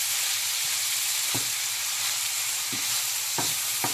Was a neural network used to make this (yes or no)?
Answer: yes